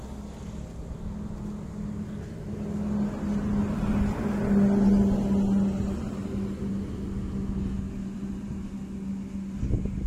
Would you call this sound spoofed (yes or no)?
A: no